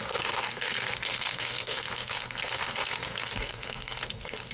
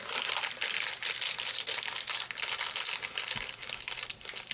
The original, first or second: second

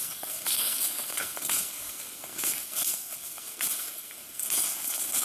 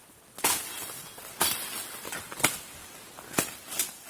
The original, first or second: second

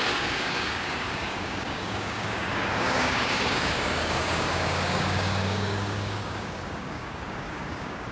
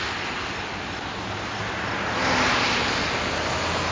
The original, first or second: second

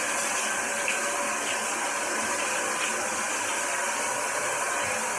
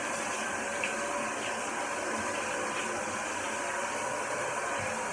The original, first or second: first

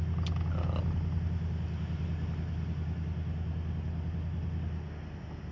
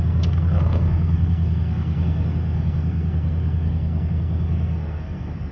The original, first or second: first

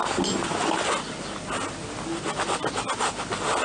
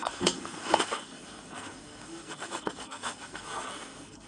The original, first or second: first